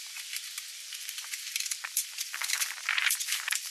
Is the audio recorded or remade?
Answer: remade